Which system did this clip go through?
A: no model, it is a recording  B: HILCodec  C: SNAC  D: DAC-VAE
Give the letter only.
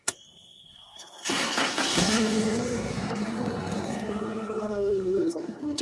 C